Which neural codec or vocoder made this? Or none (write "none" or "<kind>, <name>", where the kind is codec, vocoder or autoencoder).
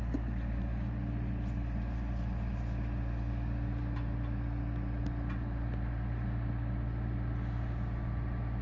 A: none